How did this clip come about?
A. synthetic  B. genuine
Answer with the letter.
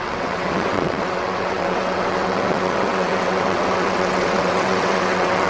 A